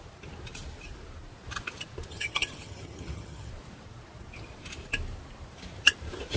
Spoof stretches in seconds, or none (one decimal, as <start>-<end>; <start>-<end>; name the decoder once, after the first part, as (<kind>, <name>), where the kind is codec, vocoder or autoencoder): 2.1-3.5 (vocoder, HiFi-GAN)

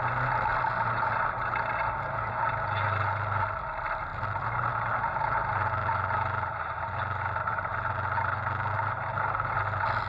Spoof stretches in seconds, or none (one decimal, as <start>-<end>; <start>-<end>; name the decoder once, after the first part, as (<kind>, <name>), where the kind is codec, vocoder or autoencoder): none